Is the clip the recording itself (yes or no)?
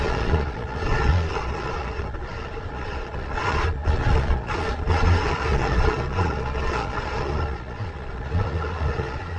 no